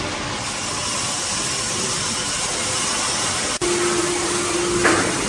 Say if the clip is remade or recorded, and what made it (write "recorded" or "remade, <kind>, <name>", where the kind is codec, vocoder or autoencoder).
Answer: recorded